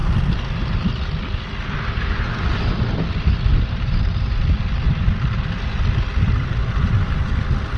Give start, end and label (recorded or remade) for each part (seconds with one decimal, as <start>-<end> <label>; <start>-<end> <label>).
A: 0.0-7.8 recorded